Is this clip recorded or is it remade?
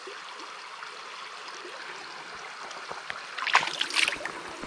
recorded